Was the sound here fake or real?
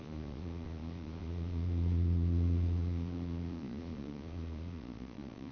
fake